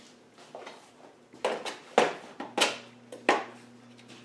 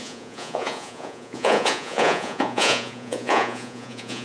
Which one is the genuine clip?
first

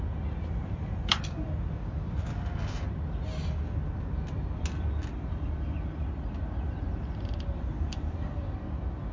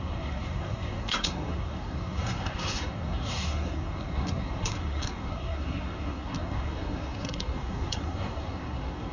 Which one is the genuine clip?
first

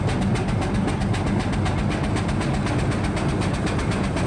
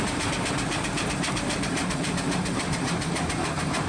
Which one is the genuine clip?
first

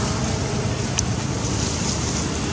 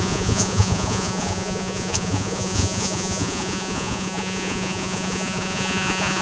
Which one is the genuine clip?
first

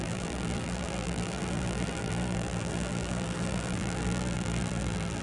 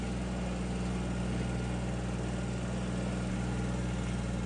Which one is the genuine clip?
second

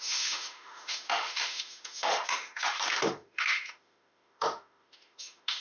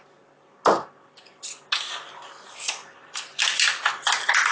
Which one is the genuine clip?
second